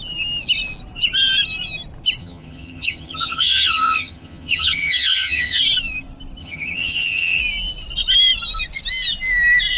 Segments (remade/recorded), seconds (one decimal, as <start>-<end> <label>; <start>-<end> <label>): 0.0-2.2 recorded; 2.2-5.6 remade; 5.6-6.4 recorded; 6.4-7.4 remade; 7.4-9.8 recorded